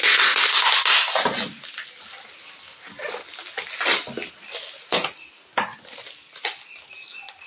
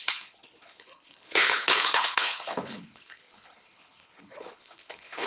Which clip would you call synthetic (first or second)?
second